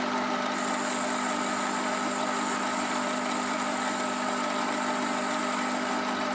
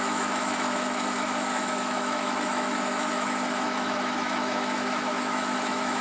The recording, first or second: first